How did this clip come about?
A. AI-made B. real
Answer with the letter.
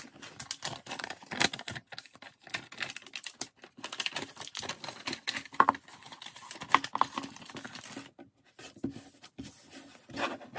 B